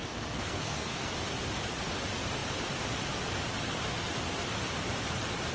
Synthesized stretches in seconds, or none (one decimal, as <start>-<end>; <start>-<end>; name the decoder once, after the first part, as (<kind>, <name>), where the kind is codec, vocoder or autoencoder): 0.0-1.1 (codec, SNAC)